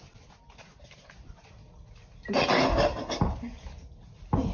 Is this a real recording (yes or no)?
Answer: yes